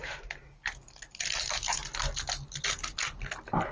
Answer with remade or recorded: recorded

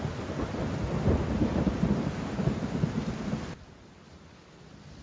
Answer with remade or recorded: recorded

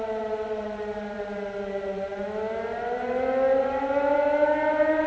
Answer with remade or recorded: remade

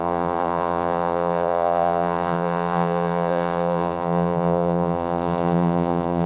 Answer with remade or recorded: remade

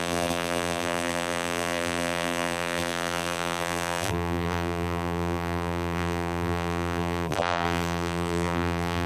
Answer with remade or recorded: remade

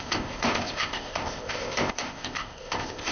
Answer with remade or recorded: remade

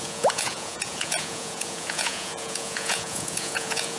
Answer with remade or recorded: remade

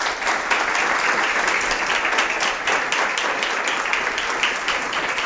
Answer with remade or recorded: recorded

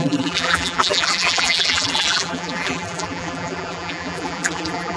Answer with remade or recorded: remade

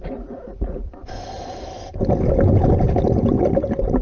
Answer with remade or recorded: recorded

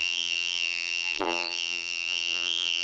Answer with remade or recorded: remade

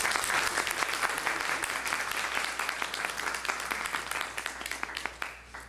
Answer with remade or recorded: recorded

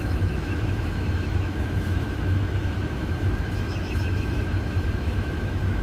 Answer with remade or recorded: remade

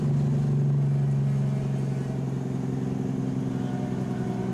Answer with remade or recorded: recorded